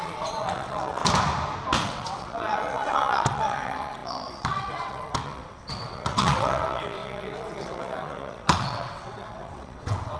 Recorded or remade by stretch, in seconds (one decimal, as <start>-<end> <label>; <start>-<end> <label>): 0.0-1.0 remade; 1.0-1.8 recorded; 1.8-10.2 remade